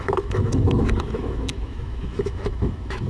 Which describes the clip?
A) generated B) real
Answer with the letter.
A